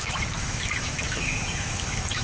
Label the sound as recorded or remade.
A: remade